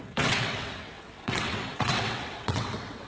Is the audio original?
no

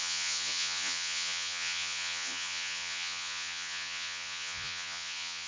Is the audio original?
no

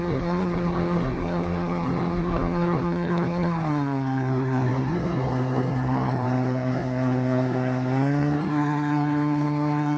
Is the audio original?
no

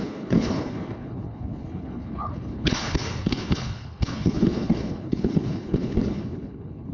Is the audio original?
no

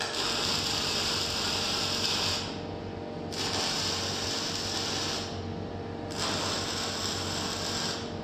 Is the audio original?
yes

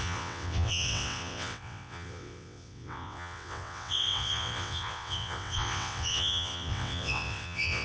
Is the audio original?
no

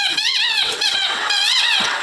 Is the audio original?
no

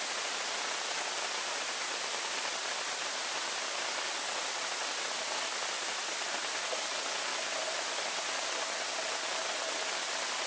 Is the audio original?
yes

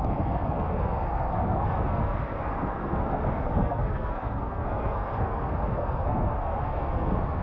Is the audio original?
no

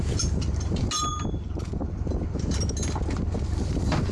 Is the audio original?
yes